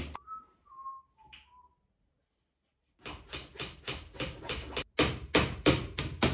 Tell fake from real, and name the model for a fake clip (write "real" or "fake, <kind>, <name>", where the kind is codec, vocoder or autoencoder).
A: real